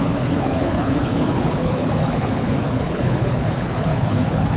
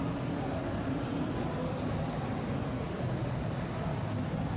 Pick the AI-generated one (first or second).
first